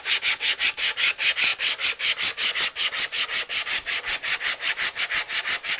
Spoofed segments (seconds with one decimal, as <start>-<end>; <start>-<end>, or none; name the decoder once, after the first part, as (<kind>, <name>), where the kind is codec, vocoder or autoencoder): 1.5-5.0 (vocoder, BigVGAN v2)